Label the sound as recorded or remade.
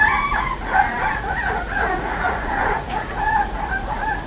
remade